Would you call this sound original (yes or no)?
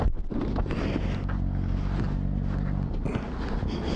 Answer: yes